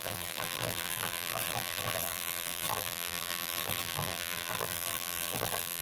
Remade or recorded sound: remade